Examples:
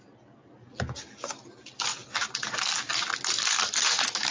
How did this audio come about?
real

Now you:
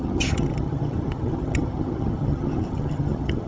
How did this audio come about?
fake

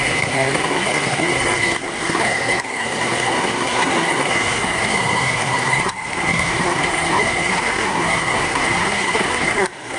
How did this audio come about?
fake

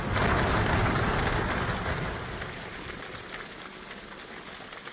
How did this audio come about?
real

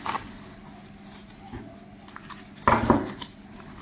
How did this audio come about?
real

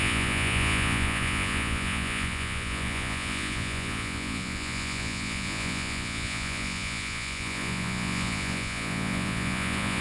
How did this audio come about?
fake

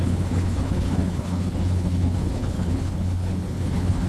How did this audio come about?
fake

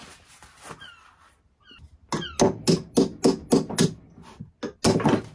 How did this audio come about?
real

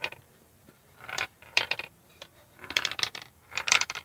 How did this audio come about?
fake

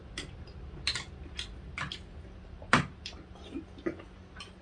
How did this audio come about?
real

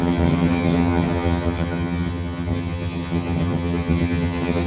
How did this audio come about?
fake